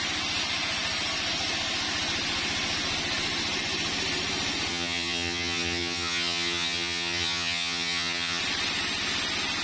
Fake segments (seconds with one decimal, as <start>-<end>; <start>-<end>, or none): 4.7-8.4